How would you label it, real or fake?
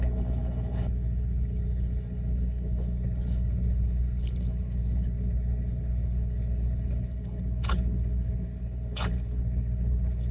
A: fake